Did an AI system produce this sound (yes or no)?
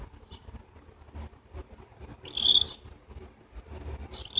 no